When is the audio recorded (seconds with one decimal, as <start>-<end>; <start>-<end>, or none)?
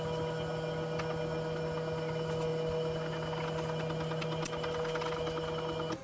0.0-6.0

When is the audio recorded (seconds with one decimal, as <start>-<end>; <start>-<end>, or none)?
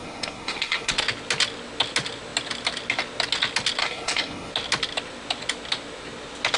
0.9-3.8; 4.5-6.6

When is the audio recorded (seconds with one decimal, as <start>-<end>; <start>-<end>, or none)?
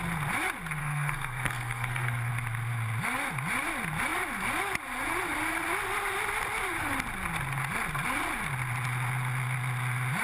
0.0-0.8; 2.3-10.2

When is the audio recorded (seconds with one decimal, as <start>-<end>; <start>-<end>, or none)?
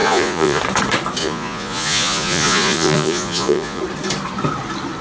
0.6-1.2; 3.8-5.0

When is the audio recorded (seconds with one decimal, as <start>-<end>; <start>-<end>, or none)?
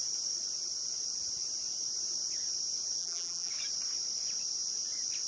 0.0-3.0; 3.5-5.3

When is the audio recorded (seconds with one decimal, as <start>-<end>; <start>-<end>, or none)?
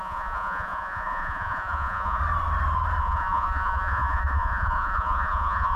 2.2-3.0